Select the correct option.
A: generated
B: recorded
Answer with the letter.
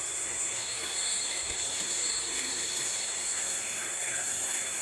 A